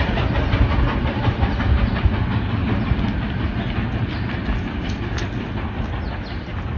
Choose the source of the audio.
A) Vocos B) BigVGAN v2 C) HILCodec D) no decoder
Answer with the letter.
D